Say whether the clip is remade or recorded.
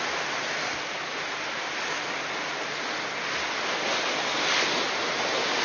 recorded